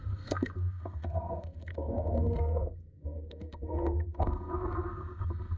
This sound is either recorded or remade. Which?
remade